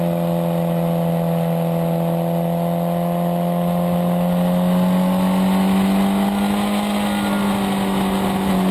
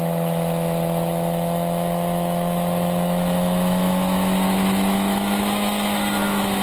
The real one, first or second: first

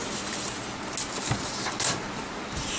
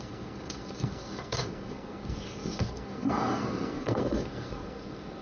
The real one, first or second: first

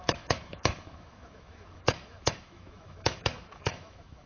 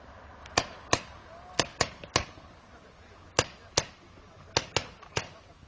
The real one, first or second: second